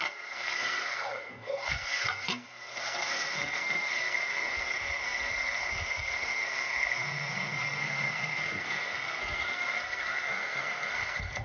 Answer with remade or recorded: remade